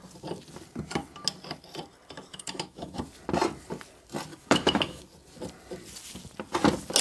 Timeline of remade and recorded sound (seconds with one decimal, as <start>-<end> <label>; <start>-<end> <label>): 0.0-2.3 recorded; 2.3-3.0 remade; 3.0-4.3 recorded; 4.3-5.0 remade; 5.0-7.0 recorded